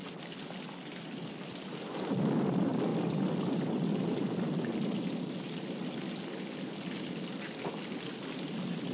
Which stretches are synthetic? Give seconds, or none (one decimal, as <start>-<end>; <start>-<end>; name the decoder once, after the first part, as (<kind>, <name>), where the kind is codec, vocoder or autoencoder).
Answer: 0.0-1.6 (vocoder, BigVGAN v2); 2.9-3.5